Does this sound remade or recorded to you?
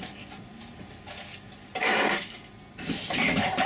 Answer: recorded